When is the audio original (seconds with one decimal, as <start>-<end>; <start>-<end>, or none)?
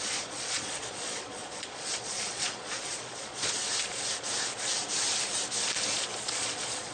3.6-5.8